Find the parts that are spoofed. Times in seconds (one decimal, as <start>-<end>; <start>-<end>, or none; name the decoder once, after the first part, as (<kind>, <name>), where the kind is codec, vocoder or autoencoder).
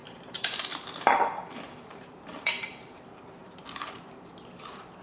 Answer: 0.0-3.0 (vocoder, BigVGAN v2); 3.4-5.0